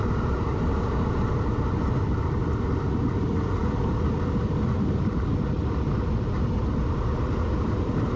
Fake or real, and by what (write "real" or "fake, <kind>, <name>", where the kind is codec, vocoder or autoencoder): real